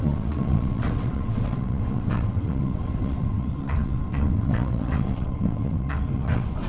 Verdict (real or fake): fake